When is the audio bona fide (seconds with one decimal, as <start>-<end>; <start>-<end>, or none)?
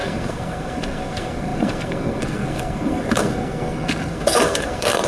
none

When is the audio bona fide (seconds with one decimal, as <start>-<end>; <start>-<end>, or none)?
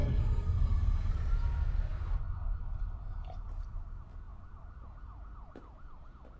1.1-6.4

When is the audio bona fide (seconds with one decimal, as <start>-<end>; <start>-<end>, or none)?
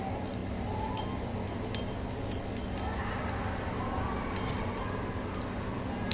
0.0-6.1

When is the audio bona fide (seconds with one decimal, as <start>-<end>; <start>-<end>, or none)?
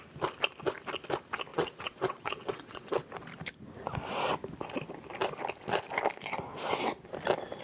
0.0-1.5; 3.1-7.6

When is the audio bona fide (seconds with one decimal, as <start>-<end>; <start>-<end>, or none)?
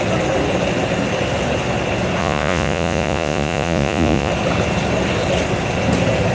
0.0-2.2; 4.3-6.3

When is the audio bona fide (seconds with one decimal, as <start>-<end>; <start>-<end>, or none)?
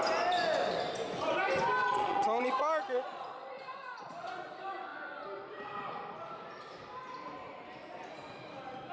0.0-1.8; 4.3-8.9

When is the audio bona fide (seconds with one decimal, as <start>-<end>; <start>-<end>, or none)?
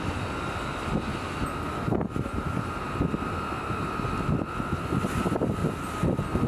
1.1-5.0; 5.6-6.5